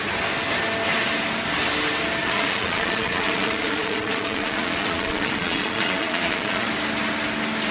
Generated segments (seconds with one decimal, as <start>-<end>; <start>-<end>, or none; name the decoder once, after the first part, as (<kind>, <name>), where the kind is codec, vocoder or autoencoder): 2.2-6.7 (vocoder, Vocos)